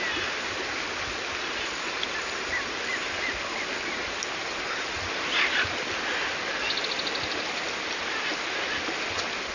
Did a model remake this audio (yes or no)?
no